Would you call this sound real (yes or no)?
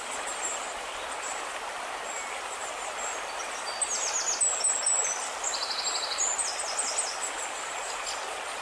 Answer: yes